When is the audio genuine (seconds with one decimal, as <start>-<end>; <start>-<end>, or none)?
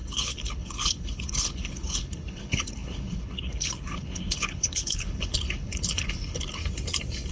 6.6-7.3